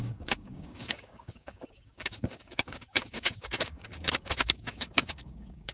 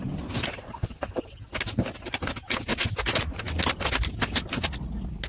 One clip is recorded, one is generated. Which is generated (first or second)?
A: first